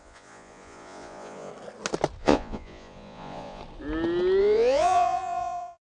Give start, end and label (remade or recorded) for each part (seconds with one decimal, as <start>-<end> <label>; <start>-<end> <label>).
0.0-1.5 remade; 1.5-2.2 recorded; 2.2-3.6 remade; 3.6-4.4 recorded; 4.4-5.9 remade